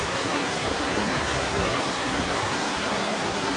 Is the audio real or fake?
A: fake